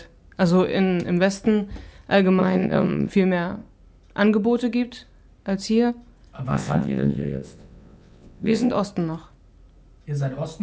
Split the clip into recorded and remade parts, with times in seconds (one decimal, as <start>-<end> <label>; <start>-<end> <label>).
0.0-2.4 recorded; 2.4-3.1 remade; 3.1-6.5 recorded; 6.5-8.7 remade; 8.7-10.6 recorded